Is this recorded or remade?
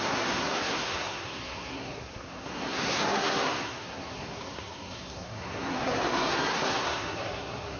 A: remade